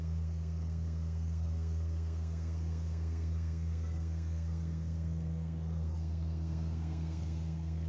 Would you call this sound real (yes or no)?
no